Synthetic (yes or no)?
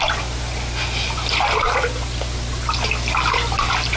no